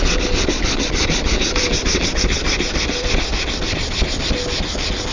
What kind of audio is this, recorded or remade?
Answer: remade